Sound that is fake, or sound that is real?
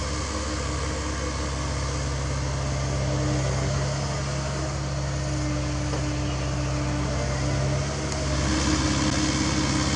real